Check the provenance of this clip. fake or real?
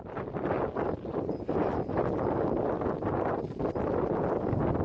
real